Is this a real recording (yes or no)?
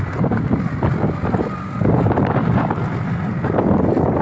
yes